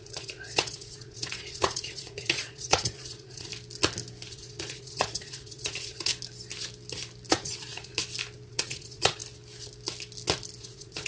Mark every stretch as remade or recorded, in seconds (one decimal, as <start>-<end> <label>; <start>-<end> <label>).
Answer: 0.0-3.5 remade; 3.5-4.3 recorded; 4.3-6.1 remade; 6.1-7.3 recorded; 7.3-7.9 remade; 7.9-8.5 recorded; 8.5-9.2 remade; 9.2-10.6 recorded; 10.6-11.1 remade